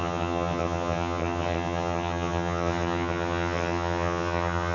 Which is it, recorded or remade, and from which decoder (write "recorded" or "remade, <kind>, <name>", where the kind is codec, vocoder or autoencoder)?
remade, vocoder, HiFi-GAN